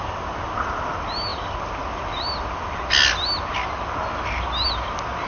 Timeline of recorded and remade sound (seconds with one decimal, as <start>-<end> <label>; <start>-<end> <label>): 0.0-5.3 recorded